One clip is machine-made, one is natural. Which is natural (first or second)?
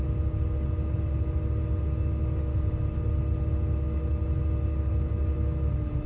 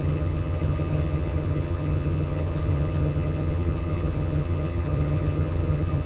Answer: first